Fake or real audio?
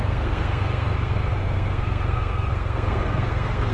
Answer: fake